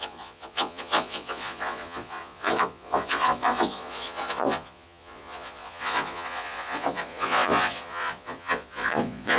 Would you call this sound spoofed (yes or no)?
yes